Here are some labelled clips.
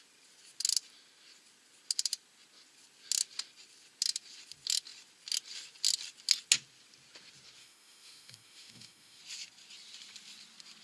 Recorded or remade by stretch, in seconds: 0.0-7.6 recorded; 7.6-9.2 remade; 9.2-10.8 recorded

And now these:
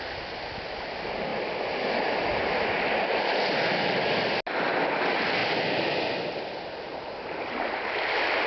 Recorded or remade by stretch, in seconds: 0.0-8.5 recorded

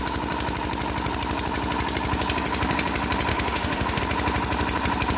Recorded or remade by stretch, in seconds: 0.0-3.3 recorded; 3.3-4.0 remade; 4.0-5.2 recorded